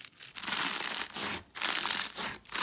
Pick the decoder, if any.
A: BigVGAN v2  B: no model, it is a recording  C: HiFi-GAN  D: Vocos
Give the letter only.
A